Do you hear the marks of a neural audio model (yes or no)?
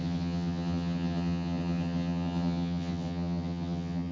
yes